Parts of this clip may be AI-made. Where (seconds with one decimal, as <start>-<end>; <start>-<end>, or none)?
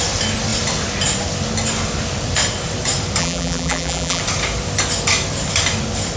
3.2-4.2